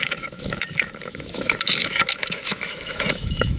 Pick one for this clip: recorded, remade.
remade